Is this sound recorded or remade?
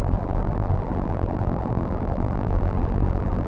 remade